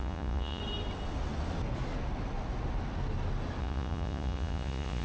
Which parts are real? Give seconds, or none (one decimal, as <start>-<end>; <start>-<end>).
0.6-3.6